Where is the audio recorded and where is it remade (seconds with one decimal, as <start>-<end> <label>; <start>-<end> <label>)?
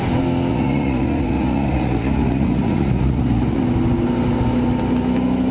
0.0-0.5 recorded; 0.5-3.6 remade; 3.6-5.5 recorded